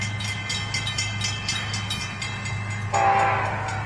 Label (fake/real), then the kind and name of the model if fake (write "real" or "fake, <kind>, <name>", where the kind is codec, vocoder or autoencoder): real